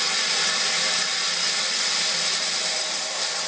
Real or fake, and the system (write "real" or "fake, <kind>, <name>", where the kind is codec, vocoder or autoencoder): real